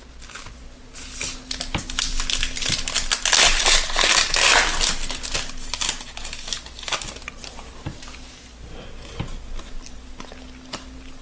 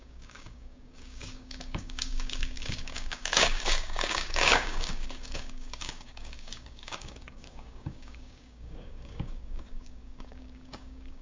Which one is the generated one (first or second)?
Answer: second